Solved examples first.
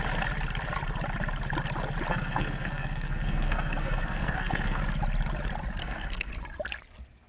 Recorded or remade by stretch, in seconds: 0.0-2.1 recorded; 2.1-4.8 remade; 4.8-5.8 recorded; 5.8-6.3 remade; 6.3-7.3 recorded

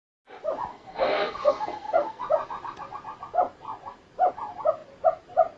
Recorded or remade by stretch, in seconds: 0.0-0.7 recorded; 0.7-2.2 remade; 2.2-5.6 recorded

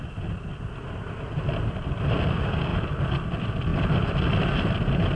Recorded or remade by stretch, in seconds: 0.0-5.1 recorded

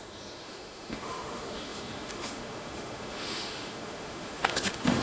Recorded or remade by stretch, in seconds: 0.0-5.0 remade

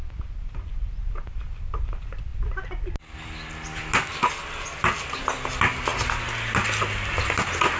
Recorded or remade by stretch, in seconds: 0.0-7.8 recorded

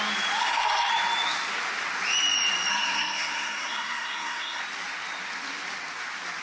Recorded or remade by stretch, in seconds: 0.0-0.4 recorded; 0.4-0.9 remade; 0.9-2.7 recorded; 2.7-4.6 remade; 4.6-6.4 recorded

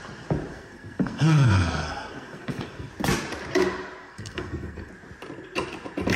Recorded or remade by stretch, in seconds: 0.0-0.5 recorded; 0.5-2.9 remade; 2.9-4.0 recorded; 4.0-4.9 remade; 4.9-6.2 recorded